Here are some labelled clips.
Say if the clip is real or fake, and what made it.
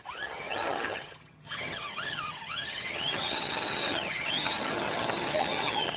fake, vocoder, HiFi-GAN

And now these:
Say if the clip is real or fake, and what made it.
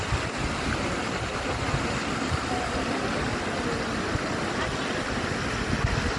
real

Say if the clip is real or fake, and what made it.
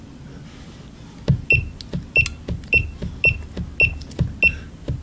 real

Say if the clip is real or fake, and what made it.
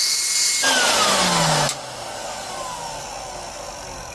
real